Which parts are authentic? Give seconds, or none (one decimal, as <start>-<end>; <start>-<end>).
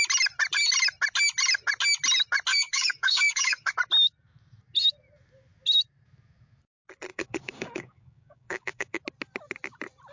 0.0-2.5; 3.7-7.1; 9.0-10.1